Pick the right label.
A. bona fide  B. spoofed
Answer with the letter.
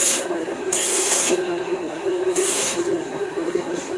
B